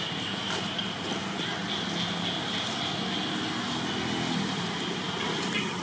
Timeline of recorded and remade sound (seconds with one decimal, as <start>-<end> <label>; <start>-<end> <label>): 0.0-5.8 recorded